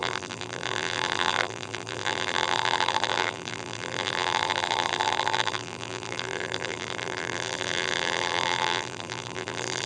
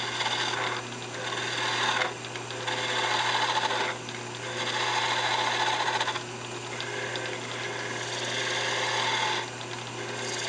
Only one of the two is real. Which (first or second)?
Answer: second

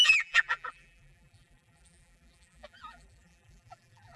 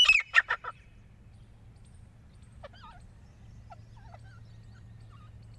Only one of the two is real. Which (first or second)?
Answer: second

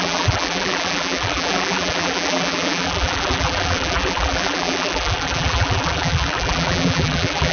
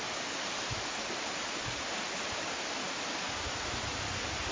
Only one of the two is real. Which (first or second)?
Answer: second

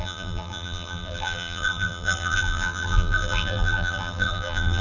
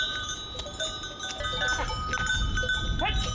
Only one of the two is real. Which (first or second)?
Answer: second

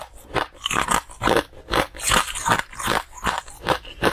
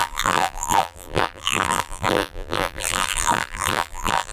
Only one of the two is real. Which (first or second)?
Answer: first